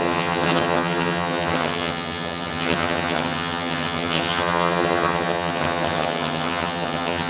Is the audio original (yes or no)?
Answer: no